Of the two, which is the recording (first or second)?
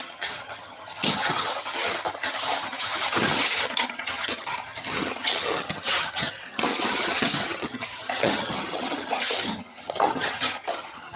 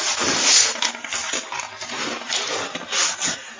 second